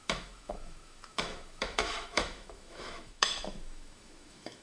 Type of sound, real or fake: fake